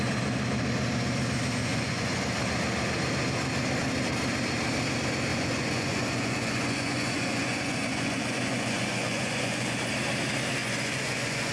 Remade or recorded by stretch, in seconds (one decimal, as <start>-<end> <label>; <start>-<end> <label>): 0.0-1.6 recorded; 1.6-2.2 remade; 2.2-5.3 recorded; 5.3-9.9 remade; 9.9-10.6 recorded; 10.6-11.5 remade